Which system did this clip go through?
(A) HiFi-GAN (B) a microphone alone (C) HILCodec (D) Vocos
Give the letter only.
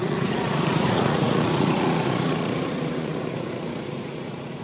D